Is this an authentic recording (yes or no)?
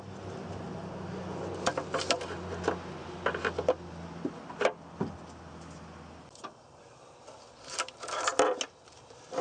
yes